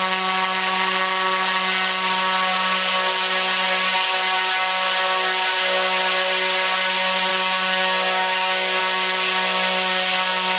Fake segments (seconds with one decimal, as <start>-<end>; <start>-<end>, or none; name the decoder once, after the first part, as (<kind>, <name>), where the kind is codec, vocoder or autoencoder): 7.3-8.8 (codec, DAC)